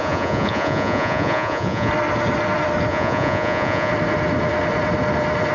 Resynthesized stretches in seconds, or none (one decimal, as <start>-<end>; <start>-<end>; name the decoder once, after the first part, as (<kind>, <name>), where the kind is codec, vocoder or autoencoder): 0.0-1.9 (vocoder, Vocos); 2.9-3.9